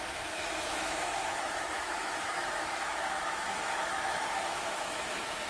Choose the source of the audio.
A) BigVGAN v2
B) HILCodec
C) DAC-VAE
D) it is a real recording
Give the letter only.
C